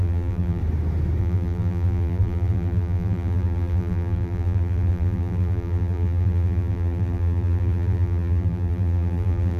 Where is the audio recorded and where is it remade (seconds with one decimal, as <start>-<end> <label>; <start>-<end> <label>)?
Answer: 0.0-0.6 remade; 0.6-1.2 recorded; 1.2-9.6 remade